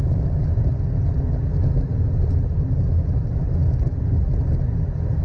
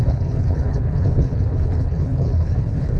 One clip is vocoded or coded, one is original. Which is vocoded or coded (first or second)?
second